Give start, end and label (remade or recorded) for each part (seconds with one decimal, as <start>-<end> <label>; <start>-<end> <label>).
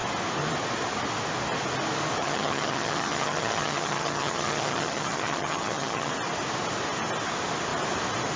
0.0-2.2 recorded; 2.2-6.1 remade; 6.1-8.4 recorded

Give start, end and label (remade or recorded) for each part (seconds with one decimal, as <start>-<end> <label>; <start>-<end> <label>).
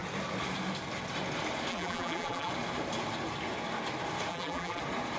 0.0-1.7 recorded; 1.7-2.5 remade; 2.5-4.3 recorded; 4.3-4.8 remade; 4.8-5.2 recorded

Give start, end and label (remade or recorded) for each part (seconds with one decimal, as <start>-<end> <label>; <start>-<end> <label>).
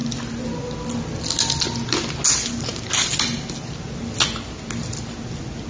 0.0-5.7 recorded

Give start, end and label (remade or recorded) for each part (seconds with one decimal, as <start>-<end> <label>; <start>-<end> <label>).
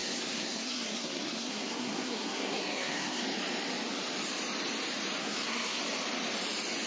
0.0-3.2 remade; 3.2-5.2 recorded; 5.2-5.8 remade; 5.8-6.9 recorded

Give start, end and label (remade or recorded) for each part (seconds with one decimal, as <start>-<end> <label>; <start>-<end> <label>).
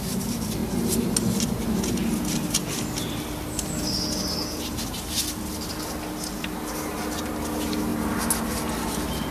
0.0-9.3 recorded